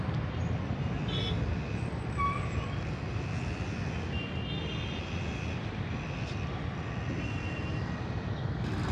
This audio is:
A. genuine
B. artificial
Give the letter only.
A